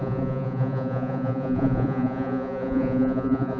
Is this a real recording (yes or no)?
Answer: no